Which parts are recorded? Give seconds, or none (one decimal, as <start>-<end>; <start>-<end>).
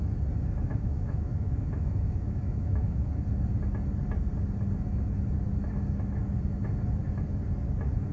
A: 0.0-0.7; 3.1-8.1